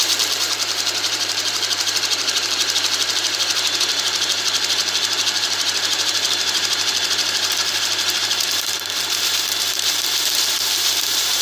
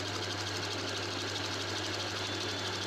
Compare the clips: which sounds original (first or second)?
second